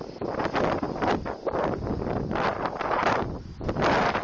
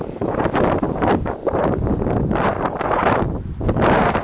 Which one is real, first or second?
first